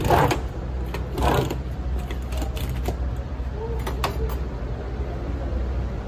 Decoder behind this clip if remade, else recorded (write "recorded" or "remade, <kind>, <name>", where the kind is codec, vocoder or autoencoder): recorded